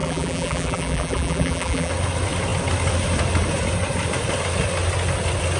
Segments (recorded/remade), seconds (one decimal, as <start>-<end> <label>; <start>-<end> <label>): 0.0-1.9 remade; 1.9-5.6 recorded